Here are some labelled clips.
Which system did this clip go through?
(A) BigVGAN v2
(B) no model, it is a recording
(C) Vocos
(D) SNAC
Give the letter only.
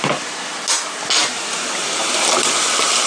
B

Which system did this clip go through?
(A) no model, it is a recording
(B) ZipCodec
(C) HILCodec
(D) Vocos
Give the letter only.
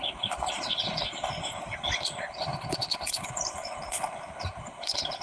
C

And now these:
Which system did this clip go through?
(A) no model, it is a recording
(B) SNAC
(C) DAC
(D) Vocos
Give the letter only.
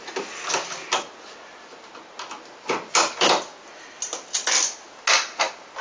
A